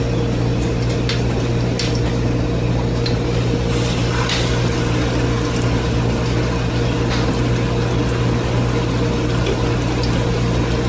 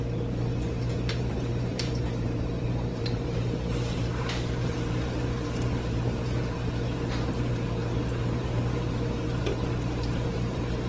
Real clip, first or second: first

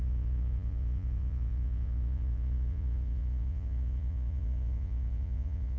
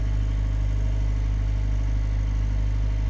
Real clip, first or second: second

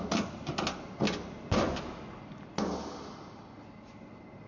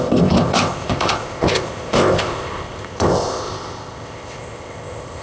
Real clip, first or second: first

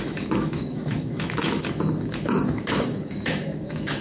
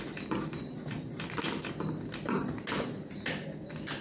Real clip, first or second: second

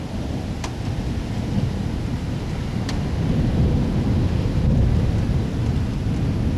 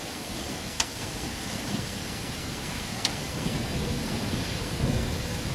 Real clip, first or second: first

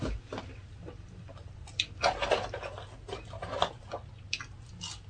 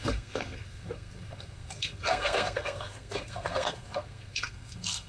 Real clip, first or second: first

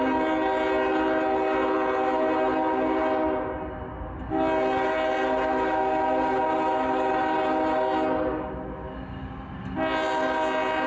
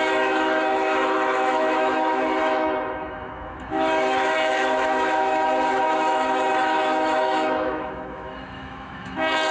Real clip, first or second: first